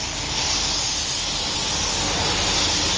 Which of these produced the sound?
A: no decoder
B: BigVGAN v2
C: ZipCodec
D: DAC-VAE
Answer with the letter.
A